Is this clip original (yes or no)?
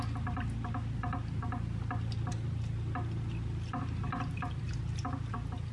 yes